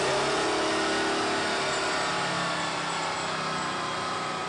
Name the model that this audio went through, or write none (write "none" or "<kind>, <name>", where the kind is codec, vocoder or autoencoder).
none